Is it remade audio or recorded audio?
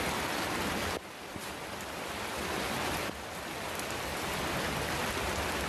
recorded